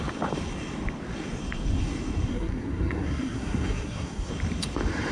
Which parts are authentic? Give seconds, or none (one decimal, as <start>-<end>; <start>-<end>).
0.0-2.3; 4.3-5.1